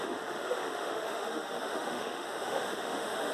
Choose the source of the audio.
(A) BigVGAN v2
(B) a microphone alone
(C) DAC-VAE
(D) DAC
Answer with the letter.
C